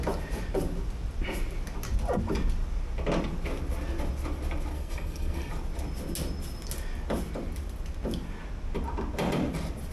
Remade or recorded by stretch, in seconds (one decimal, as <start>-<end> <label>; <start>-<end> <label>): 0.0-4.7 recorded; 4.7-5.5 remade; 5.5-9.9 recorded